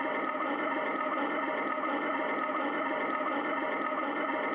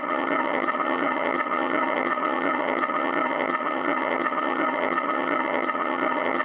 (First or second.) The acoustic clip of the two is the first